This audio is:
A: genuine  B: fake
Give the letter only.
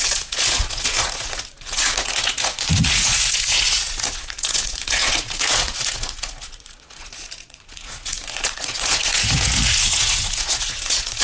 B